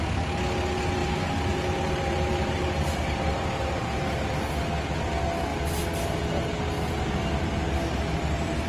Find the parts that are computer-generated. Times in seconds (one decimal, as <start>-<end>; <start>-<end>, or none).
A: 1.0-4.4